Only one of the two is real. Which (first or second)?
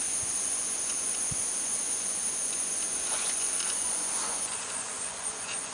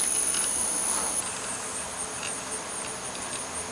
second